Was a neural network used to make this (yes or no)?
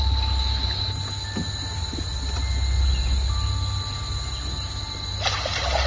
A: no